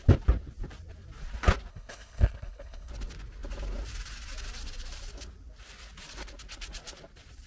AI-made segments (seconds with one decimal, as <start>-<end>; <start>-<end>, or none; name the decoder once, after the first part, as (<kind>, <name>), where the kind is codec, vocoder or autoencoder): 1.7-2.9 (codec, HILCodec)